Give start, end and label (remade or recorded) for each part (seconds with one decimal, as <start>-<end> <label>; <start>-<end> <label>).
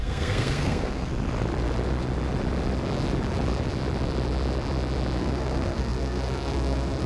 0.0-1.1 remade; 1.1-5.2 recorded; 5.2-7.1 remade